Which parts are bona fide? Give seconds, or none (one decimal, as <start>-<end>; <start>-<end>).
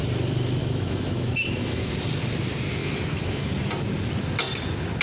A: 0.0-0.6; 1.9-2.8; 3.5-5.0